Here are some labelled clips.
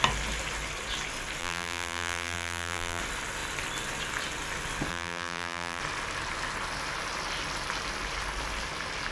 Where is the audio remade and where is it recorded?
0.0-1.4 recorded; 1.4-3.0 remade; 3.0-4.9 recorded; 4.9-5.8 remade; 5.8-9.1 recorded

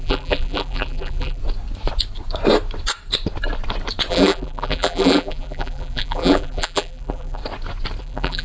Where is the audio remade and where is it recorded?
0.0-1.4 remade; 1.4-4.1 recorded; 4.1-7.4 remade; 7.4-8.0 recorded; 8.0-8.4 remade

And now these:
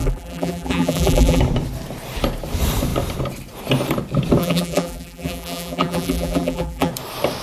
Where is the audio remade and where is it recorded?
0.0-1.4 remade; 1.4-4.4 recorded; 4.4-6.9 remade; 6.9-7.4 recorded

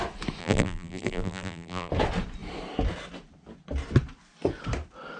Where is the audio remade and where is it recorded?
0.0-0.4 recorded; 0.4-1.9 remade; 1.9-5.2 recorded

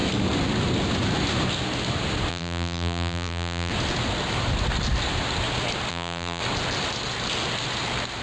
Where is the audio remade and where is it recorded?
0.0-2.3 recorded; 2.3-3.7 remade; 3.7-5.9 recorded; 5.9-6.4 remade; 6.4-8.2 recorded